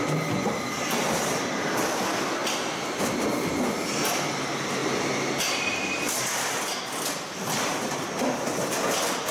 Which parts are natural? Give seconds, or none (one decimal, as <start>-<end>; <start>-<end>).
0.0-9.3